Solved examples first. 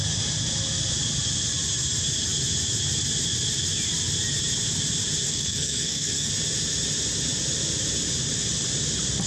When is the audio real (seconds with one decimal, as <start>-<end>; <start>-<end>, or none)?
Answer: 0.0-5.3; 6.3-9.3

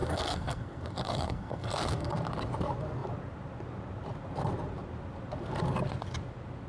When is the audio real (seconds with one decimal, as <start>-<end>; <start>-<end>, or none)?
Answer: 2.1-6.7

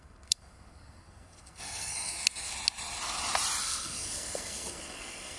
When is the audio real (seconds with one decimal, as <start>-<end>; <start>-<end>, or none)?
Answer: 2.5-3.6